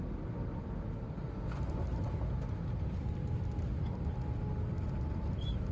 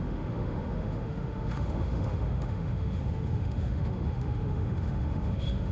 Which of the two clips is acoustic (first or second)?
first